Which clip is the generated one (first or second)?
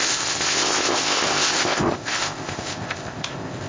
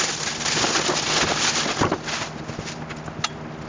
first